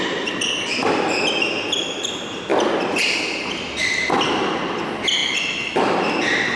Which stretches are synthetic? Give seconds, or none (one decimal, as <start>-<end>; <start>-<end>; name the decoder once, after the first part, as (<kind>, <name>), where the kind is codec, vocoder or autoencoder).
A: none